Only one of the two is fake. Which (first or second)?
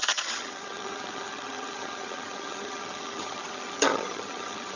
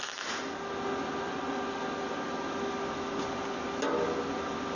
first